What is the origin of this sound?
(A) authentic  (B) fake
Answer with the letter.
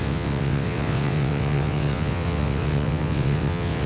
B